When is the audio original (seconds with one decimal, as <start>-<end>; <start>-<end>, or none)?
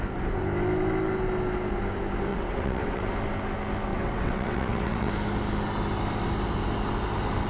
0.0-2.3; 3.1-3.9; 5.1-7.5